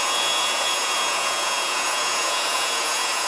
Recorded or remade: remade